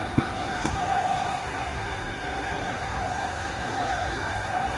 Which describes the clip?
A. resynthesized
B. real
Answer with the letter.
A